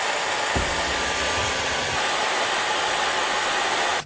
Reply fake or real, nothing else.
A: real